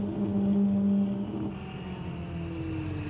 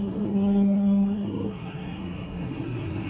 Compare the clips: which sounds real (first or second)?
first